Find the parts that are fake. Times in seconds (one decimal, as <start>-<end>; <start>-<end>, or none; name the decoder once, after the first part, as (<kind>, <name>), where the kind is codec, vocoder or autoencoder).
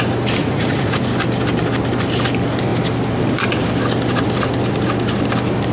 0.4-1.0 (vocoder, Vocos)